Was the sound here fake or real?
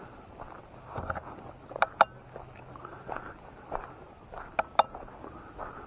real